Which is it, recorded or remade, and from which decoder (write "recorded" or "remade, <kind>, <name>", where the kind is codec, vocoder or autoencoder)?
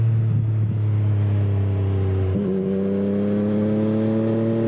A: recorded